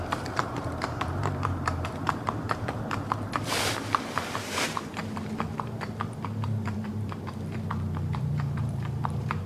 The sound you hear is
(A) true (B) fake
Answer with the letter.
B